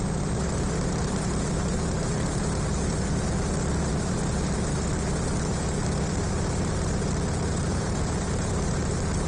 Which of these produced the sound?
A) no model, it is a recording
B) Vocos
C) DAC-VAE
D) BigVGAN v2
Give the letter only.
D